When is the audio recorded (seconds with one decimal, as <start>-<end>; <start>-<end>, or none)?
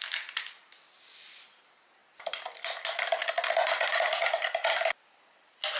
0.0-5.8